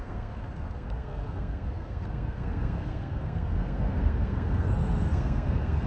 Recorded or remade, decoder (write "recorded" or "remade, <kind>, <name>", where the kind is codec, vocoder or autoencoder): remade, codec, SNAC